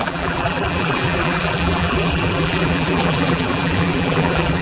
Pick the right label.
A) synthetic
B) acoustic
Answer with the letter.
A